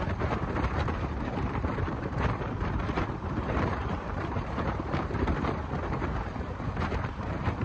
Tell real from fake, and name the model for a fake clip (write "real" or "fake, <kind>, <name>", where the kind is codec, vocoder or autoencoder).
fake, vocoder, BigVGAN v2